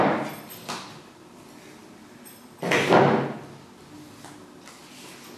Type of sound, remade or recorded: recorded